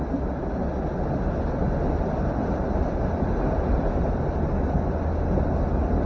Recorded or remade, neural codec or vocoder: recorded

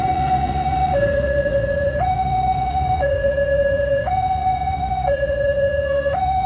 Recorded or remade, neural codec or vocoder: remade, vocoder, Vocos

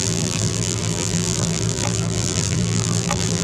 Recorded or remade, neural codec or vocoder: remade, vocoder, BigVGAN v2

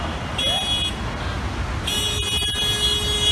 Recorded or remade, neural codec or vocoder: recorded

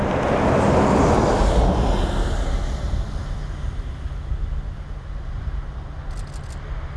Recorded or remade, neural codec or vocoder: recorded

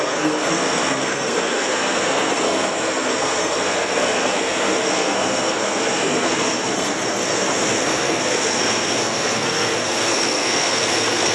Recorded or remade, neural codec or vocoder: remade, codec, SNAC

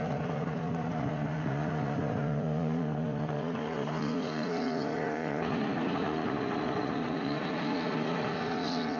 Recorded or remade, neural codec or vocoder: remade, vocoder, Vocos